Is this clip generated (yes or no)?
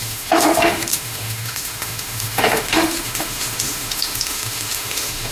yes